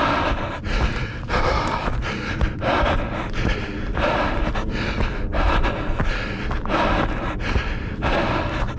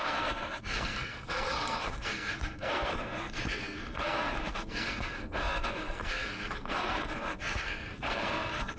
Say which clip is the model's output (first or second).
second